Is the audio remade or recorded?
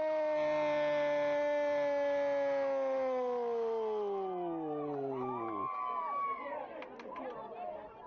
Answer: recorded